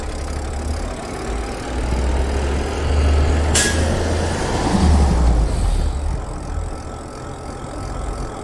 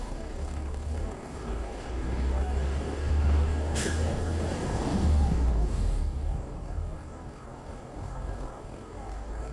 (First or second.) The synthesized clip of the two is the second